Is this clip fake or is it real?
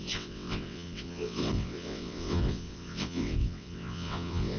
fake